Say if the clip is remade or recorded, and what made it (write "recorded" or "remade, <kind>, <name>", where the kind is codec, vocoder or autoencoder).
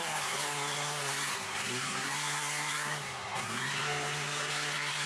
remade, codec, SNAC